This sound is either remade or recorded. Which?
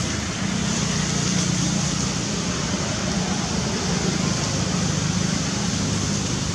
recorded